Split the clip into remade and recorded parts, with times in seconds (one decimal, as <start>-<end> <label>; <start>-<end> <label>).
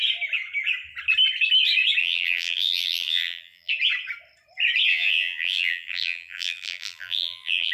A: 0.0-2.0 recorded; 2.0-3.7 remade; 3.7-4.9 recorded; 4.9-7.7 remade